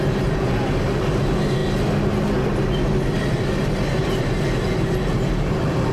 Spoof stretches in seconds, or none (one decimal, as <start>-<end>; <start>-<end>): none